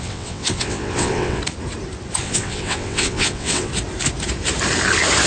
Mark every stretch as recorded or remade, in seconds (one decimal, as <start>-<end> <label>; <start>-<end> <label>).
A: 0.0-1.4 remade; 1.4-2.2 recorded; 2.2-3.7 remade; 3.7-5.3 recorded